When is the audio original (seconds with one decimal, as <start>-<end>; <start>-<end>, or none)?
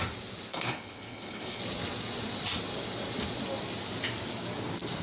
0.0-0.5; 1.6-5.0